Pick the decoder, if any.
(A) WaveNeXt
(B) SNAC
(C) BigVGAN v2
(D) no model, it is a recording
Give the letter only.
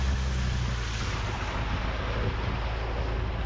D